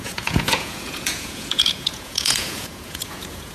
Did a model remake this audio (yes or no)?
yes